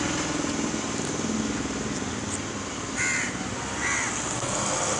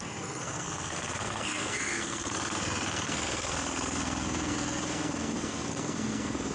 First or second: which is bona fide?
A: first